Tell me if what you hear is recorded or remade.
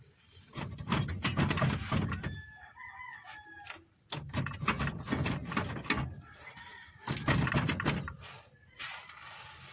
recorded